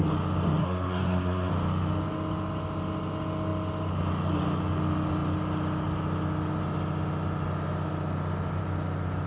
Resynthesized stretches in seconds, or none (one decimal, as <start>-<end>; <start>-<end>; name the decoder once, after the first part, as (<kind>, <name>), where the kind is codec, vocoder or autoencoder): 0.6-1.5 (codec, SNAC)